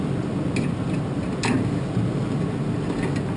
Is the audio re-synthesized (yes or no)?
no